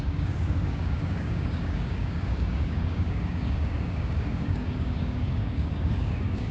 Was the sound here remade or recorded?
remade